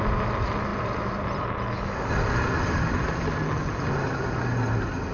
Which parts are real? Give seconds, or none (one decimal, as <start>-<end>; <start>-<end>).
0.0-5.1